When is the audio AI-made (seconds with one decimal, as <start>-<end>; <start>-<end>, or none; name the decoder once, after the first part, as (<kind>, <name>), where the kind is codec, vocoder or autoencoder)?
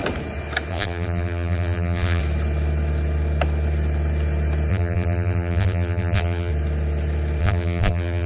0.7-2.2 (vocoder, BigVGAN v2); 4.7-6.5; 7.4-8.3